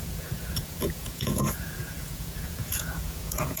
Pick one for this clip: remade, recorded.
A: remade